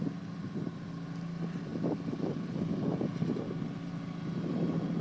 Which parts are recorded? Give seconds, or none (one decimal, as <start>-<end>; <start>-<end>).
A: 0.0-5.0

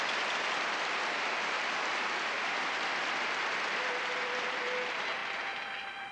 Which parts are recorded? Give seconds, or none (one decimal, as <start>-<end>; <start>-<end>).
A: 0.0-6.1

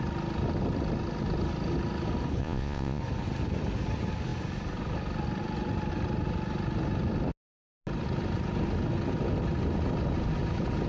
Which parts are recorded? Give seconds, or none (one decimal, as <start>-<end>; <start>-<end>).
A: 0.0-2.4; 3.0-10.9

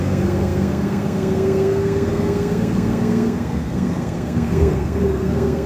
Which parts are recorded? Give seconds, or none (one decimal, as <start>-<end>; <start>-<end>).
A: none

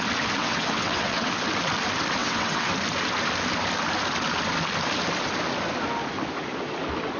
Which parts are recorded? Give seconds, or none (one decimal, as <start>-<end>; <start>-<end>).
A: 0.0-0.4; 1.3-2.2; 2.7-7.2

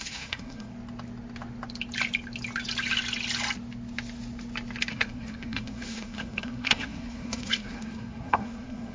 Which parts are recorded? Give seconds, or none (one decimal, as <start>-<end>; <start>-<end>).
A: 0.7-4.9

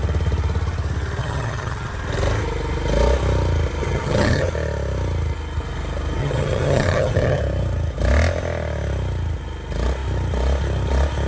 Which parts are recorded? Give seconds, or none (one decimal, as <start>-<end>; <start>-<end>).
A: 0.0-1.2; 1.9-3.8; 4.5-6.2; 7.4-11.3